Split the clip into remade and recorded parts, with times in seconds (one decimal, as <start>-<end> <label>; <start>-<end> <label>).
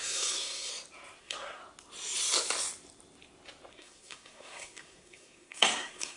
0.0-0.7 remade; 0.7-1.2 recorded; 1.2-1.6 remade; 1.6-3.7 recorded; 3.7-6.2 remade